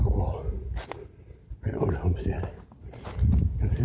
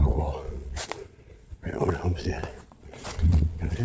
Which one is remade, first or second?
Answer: second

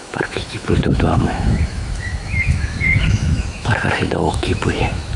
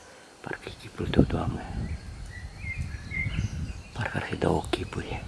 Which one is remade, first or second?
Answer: first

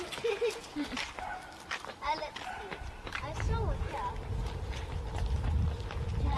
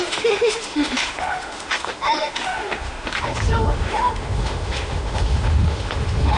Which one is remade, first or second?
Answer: second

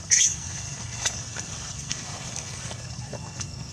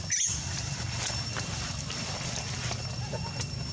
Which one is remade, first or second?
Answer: first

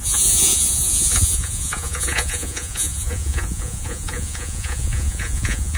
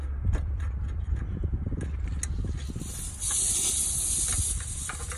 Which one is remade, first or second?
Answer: first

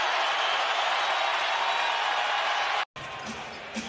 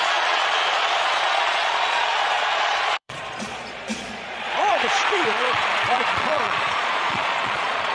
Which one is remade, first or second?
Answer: second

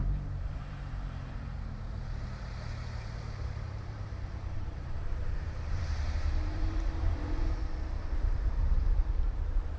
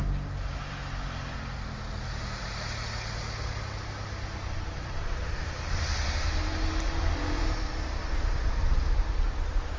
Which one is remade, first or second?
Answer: first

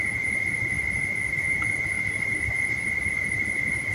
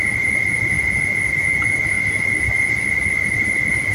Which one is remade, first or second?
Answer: first